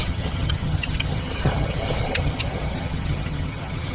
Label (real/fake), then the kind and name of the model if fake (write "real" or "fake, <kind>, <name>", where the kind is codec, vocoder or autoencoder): fake, vocoder, HiFi-GAN